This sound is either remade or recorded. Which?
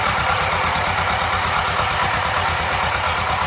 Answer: remade